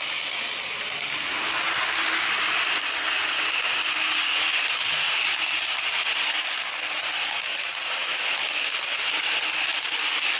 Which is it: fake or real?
real